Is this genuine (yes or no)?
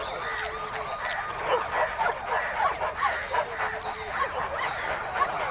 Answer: yes